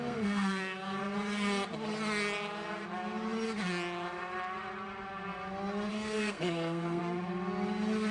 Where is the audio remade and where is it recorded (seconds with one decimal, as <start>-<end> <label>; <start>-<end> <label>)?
0.0-1.0 remade; 1.0-5.9 recorded; 5.9-7.0 remade; 7.0-8.1 recorded